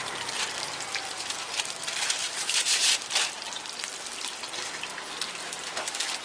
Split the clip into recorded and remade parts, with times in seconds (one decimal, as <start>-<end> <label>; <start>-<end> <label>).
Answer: 0.0-6.2 recorded